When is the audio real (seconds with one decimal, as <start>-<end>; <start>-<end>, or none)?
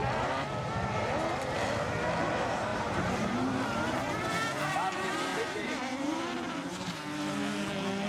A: 0.0-2.7; 3.8-5.3; 7.0-8.1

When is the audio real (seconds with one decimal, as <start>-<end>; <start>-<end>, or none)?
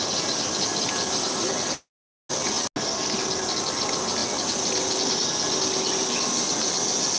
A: 0.0-7.2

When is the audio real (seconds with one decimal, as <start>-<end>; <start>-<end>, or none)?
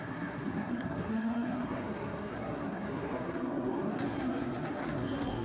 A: none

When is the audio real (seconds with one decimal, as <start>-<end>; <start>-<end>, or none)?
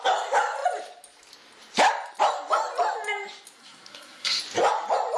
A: 0.0-3.6; 4.4-5.2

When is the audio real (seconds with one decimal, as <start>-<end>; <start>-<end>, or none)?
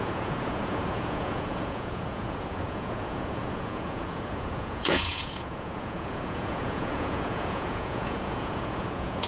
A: none